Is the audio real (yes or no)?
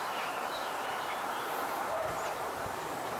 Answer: no